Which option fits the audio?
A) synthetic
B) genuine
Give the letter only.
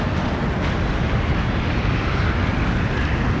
B